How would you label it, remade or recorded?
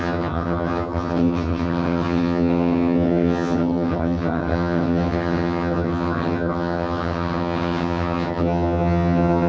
remade